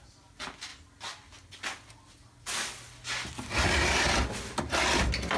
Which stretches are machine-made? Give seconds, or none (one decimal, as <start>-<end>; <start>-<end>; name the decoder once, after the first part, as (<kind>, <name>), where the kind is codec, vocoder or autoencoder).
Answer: none